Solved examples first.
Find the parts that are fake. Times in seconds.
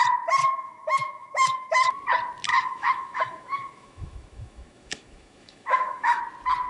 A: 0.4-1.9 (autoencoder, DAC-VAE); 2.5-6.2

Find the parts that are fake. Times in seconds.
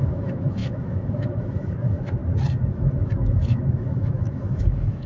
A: 0.0-2.2 (autoencoder, DAC-VAE); 2.7-5.1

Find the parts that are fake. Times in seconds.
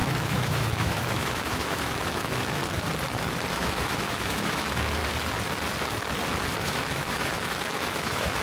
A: 0.0-2.6 (autoencoder, DAC-VAE); 3.5-5.0; 6.6-8.4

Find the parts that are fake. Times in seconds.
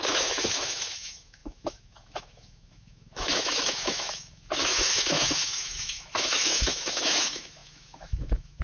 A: 0.0-8.6 (autoencoder, DAC-VAE)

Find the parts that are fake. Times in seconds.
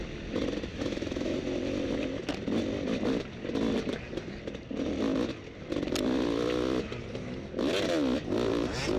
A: 0.7-1.4 (autoencoder, DAC-VAE)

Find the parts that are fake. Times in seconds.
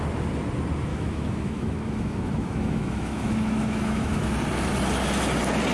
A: 0.9-4.3 (autoencoder, DAC-VAE)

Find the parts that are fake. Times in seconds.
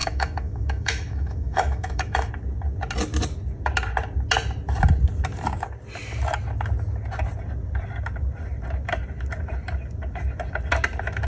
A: 0.0-2.3 (autoencoder, DAC-VAE)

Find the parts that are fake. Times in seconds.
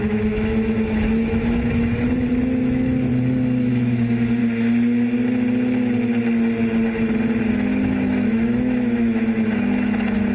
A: 0.0-3.1 (autoencoder, DAC-VAE); 3.7-4.4; 7.5-10.3